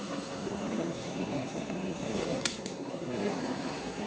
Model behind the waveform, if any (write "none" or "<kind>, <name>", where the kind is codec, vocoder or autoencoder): codec, SNAC